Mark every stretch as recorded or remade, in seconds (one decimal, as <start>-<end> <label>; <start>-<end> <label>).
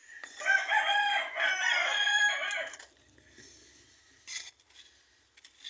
0.0-2.2 remade; 2.2-5.7 recorded